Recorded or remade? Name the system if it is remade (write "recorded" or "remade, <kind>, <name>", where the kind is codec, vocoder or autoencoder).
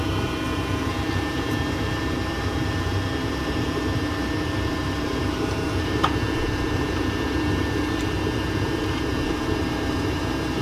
remade, vocoder, BigVGAN v2